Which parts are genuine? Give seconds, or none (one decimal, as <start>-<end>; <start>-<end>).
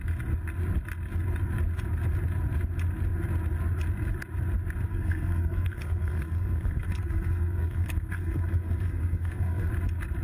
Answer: 0.0-4.9; 9.7-10.2